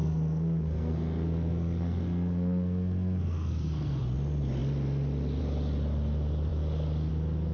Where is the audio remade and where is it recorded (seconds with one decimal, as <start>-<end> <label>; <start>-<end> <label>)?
0.0-4.0 remade; 4.0-7.5 recorded